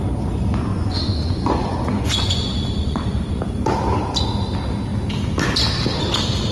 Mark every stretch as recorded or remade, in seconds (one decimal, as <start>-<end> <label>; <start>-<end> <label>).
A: 0.0-0.7 recorded; 0.7-3.4 remade; 3.4-6.5 recorded